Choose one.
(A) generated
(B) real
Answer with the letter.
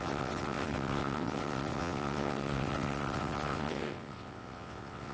A